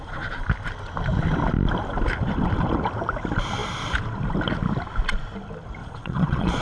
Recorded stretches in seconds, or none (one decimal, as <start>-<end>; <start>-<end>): 0.0-5.8